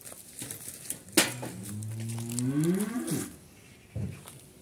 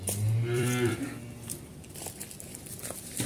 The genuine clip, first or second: first